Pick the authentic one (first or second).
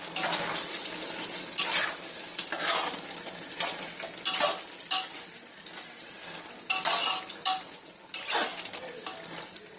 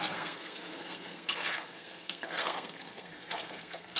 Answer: first